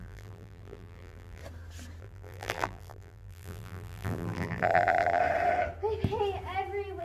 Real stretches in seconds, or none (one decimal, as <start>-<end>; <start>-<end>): 1.4-2.0; 5.2-7.0